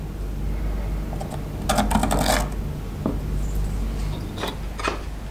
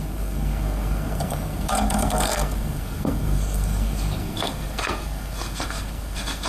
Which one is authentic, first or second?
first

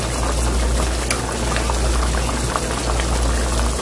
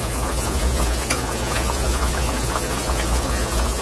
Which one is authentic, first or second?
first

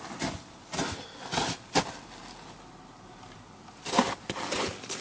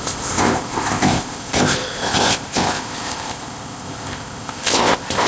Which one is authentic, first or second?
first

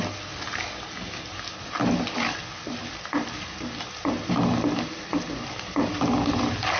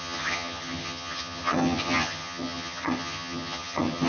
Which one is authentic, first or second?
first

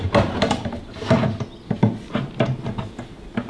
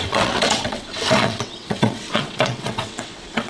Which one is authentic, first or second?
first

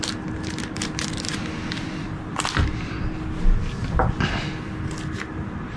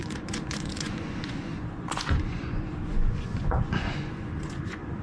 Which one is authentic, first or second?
first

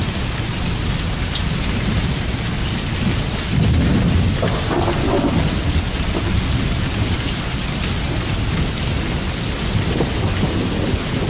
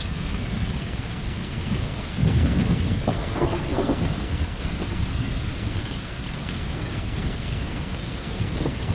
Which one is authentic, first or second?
first